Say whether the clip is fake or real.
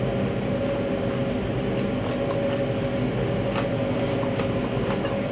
real